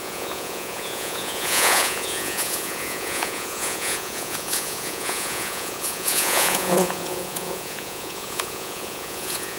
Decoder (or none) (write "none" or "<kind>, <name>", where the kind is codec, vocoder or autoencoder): vocoder, Vocos